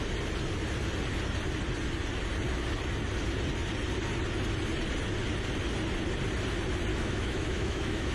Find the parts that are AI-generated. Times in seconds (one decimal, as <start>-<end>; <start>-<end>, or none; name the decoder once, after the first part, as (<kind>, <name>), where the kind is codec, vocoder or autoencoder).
6.9-8.1 (autoencoder, DAC-VAE)